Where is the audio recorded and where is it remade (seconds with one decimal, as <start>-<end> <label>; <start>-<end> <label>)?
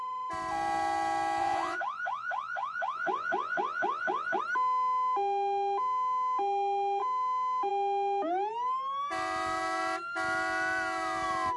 0.0-1.4 recorded; 1.4-4.4 remade; 4.4-11.6 recorded